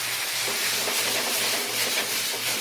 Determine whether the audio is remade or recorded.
recorded